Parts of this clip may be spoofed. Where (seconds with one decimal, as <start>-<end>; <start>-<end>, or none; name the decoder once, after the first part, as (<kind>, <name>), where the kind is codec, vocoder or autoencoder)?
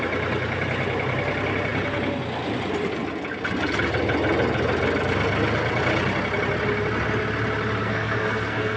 7.8-8.8 (codec, SNAC)